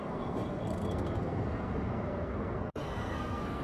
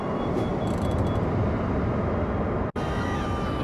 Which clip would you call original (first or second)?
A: second